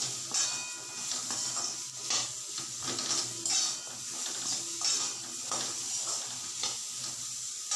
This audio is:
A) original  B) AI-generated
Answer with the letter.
A